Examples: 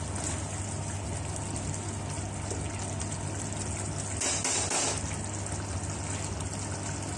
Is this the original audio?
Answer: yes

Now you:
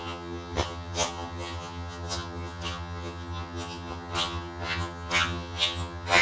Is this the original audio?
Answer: no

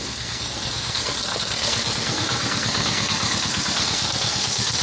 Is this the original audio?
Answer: no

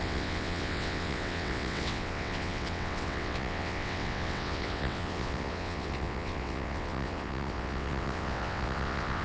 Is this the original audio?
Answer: no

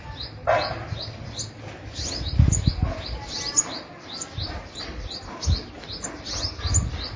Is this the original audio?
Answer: yes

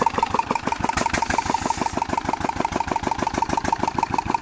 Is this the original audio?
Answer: yes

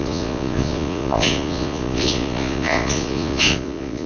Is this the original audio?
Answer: no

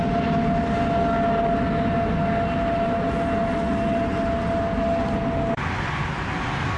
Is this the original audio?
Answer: yes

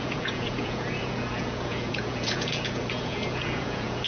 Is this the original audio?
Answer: no